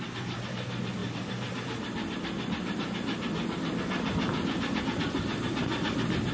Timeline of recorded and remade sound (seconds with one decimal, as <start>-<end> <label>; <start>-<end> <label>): 0.0-6.3 recorded